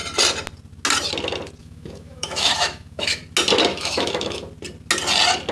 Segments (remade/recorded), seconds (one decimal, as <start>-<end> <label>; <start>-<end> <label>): 0.0-1.6 recorded; 1.6-3.2 remade; 3.2-3.7 recorded; 3.7-4.4 remade; 4.4-5.5 recorded